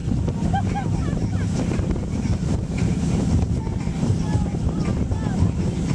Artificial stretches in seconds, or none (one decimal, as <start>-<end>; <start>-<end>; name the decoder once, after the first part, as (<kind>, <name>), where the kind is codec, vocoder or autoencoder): none